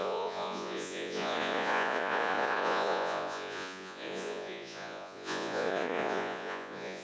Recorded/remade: remade